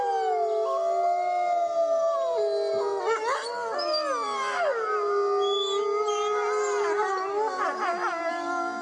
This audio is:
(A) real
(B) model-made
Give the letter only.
A